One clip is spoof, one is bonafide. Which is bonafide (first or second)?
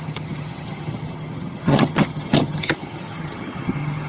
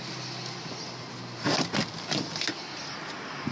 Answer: second